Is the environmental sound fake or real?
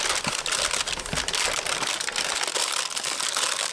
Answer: real